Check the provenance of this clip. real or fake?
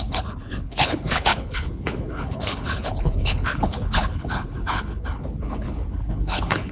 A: fake